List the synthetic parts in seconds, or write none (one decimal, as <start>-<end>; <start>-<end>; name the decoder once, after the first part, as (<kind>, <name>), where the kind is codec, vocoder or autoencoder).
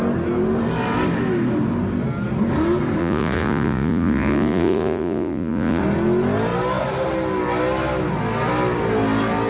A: 3.0-5.8 (vocoder, Vocos)